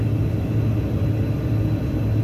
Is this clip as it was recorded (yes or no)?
yes